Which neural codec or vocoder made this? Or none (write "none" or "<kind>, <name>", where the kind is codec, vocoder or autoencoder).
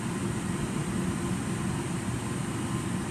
vocoder, BigVGAN v2